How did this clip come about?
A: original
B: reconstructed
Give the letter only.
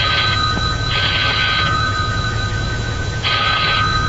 B